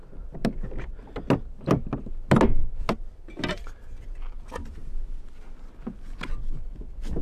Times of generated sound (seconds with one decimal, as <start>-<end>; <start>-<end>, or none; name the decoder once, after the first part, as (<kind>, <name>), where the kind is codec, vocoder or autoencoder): none